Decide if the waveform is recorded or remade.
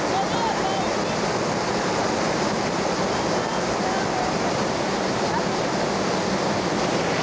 recorded